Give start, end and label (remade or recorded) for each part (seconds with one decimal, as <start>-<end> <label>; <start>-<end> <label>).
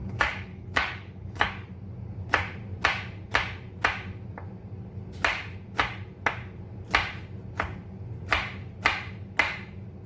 0.0-1.7 remade; 1.7-10.1 recorded